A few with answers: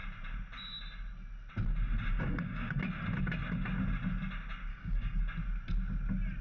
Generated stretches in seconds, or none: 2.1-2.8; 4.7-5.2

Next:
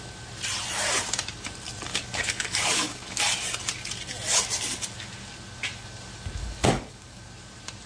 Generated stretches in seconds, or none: 1.9-3.2; 6.4-7.2

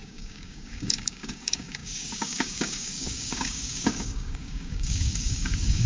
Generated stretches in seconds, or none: 0.0-5.9

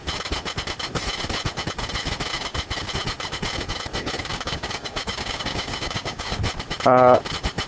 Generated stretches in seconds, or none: 4.3-6.4